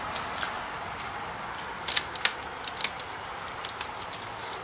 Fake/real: real